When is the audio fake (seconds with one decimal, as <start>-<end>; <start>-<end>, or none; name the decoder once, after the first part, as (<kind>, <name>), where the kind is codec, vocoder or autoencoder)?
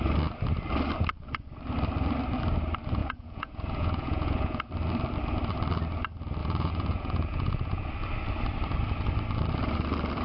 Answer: 3.0-4.7 (vocoder, Vocos); 6.4-7.9